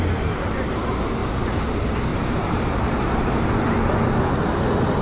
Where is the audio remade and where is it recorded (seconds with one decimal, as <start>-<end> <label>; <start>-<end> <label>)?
0.0-1.2 recorded; 1.2-1.7 remade; 1.7-2.1 recorded; 2.1-3.5 remade; 3.5-5.0 recorded